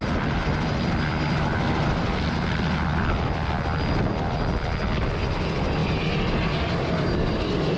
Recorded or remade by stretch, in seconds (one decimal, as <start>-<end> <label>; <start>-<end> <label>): 0.0-7.8 recorded